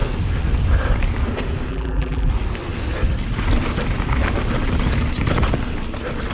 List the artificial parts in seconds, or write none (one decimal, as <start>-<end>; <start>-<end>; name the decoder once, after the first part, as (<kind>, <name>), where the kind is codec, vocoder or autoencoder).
1.7-2.3 (vocoder, BigVGAN v2)